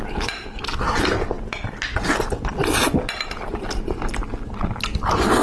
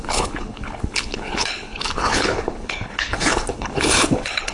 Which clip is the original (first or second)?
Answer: first